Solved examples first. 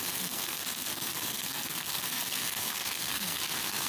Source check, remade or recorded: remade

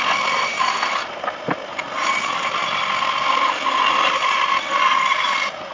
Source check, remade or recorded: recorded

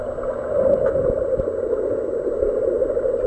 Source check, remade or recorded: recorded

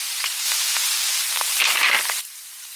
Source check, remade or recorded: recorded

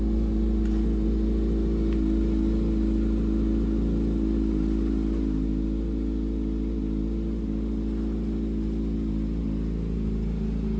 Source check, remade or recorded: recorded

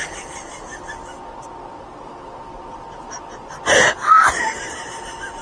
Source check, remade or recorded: recorded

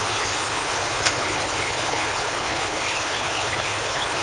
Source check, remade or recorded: remade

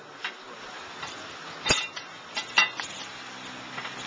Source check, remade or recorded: recorded